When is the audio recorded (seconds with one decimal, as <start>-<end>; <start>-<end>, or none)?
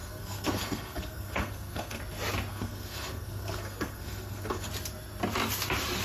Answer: 2.0-2.5; 4.7-6.0